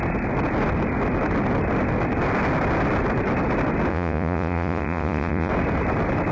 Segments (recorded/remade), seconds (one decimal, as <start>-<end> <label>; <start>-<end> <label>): 0.0-3.9 recorded; 3.9-5.5 remade; 5.5-6.3 recorded